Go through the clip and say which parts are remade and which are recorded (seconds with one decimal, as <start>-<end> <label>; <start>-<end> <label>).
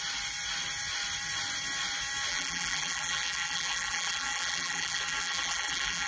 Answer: 0.0-2.3 recorded; 2.3-6.1 remade